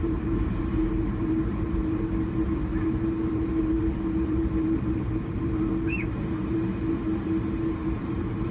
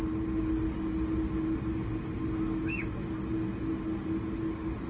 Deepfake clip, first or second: first